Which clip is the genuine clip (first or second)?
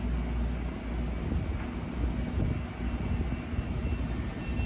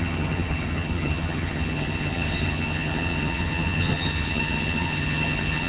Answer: first